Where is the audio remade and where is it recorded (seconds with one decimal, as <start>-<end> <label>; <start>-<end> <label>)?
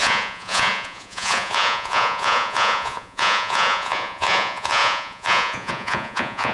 0.0-6.5 remade